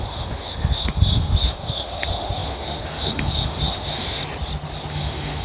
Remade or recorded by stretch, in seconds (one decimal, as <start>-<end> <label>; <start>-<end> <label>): 0.0-4.2 remade; 4.2-4.9 recorded; 4.9-5.4 remade